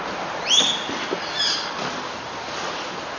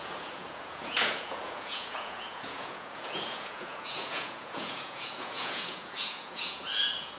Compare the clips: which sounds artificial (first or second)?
second